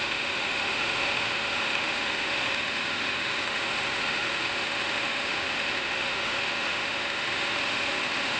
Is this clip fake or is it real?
fake